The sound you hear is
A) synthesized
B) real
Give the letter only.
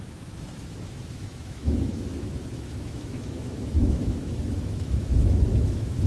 A